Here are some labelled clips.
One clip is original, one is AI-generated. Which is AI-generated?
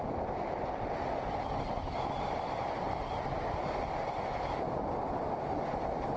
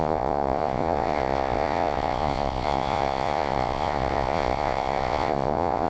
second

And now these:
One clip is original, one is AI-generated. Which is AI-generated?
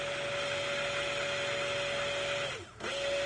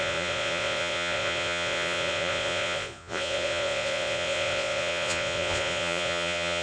second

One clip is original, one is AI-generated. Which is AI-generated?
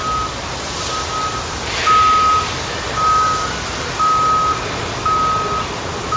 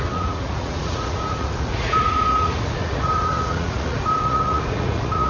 second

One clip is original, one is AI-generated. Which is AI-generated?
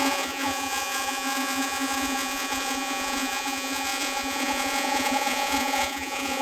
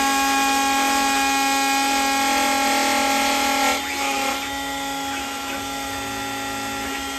first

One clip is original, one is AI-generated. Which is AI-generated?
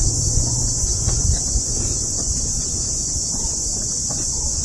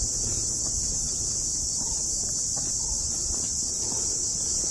first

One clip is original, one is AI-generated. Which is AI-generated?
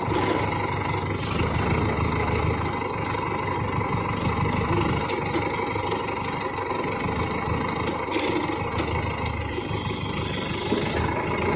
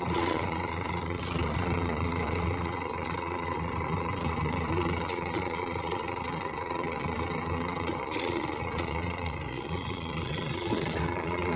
second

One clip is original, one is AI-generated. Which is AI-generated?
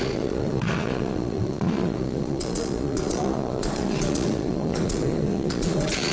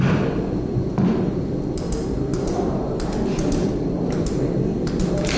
first